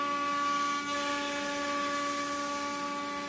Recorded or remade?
recorded